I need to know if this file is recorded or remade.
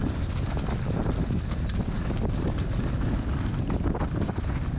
recorded